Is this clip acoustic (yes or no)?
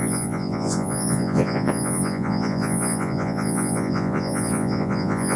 no